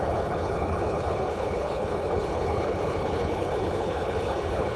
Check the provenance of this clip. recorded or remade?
remade